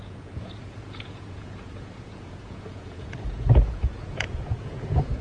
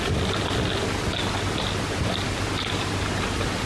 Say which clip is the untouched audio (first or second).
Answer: second